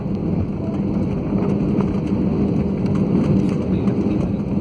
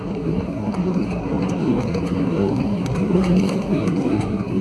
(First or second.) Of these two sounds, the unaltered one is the first